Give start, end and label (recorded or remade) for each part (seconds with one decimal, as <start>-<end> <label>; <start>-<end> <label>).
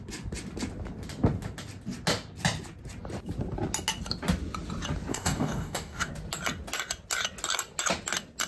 0.0-5.1 recorded; 5.1-6.1 remade; 6.1-8.5 recorded